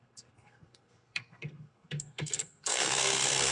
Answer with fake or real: fake